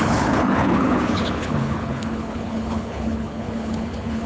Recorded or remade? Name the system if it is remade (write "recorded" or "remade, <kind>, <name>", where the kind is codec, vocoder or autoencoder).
remade, codec, HILCodec